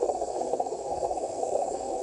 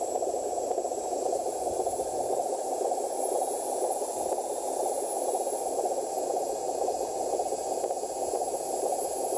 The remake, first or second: first